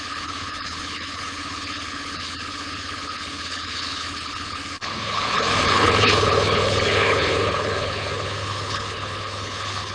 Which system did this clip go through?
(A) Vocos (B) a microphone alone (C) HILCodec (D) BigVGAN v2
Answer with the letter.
C